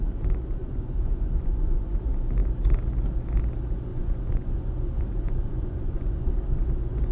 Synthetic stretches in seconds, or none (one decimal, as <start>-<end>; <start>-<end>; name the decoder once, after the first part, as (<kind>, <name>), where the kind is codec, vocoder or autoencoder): 0.6-2.0 (vocoder, Vocos); 3.9-6.3